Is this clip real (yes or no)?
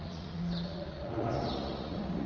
no